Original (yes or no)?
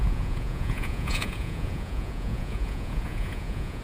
no